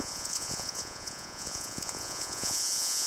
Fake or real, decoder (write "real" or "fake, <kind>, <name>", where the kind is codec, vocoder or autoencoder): fake, vocoder, Vocos